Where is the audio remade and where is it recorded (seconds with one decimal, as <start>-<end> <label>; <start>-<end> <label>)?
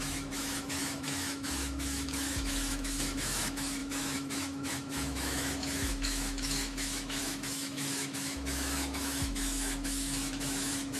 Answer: 0.0-11.0 remade